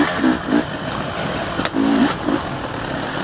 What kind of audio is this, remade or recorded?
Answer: recorded